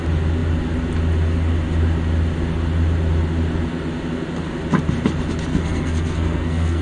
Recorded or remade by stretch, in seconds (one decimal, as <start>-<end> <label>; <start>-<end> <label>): 0.0-5.5 recorded; 5.5-6.8 remade